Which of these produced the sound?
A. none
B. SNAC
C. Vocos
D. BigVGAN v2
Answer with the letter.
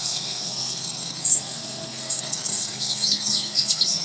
B